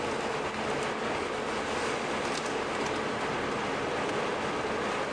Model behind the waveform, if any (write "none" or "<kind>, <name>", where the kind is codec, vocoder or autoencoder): none